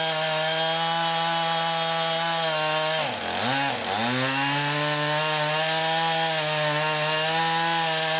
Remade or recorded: recorded